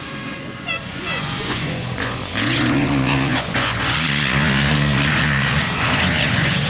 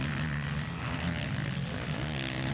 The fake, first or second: first